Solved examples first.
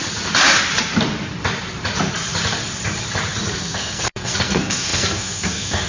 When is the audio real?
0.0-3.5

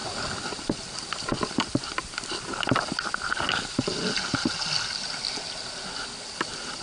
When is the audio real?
0.0-6.8

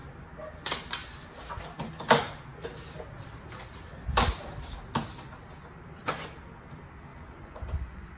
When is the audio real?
0.0-7.1

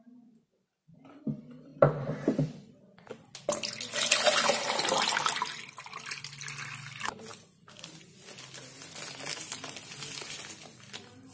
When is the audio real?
0.0-1.7; 3.3-7.3; 7.9-11.3

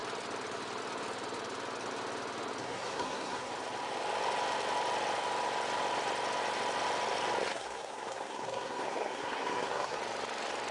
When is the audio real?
0.0-2.6; 3.5-7.5; 10.0-10.7

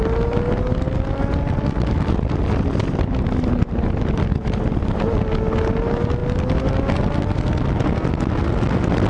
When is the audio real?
0.0-9.1

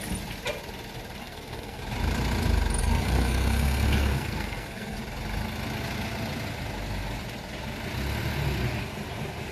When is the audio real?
0.0-1.2; 1.8-2.8; 5.0-9.5

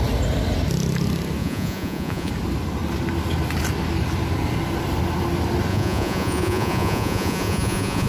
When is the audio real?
0.0-1.4; 2.3-5.7